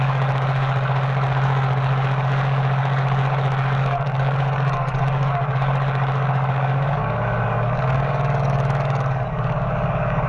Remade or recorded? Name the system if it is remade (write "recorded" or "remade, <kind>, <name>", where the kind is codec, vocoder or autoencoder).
remade, codec, DAC